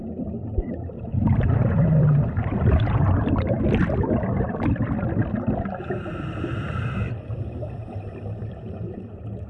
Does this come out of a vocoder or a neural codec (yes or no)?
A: yes